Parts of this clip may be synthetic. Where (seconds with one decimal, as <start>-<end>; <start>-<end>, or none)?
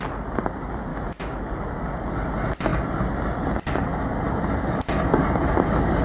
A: 0.9-1.5